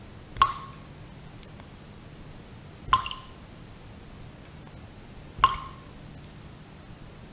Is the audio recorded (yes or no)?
yes